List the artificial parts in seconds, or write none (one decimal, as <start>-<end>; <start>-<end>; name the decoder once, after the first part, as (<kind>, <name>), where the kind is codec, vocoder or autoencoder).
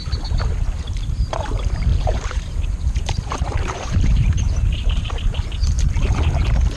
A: 1.9-5.1 (vocoder, BigVGAN v2)